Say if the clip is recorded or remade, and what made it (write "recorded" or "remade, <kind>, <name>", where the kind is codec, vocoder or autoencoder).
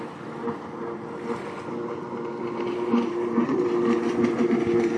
recorded